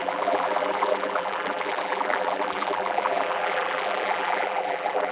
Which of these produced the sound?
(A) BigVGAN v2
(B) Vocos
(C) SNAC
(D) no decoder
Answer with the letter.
A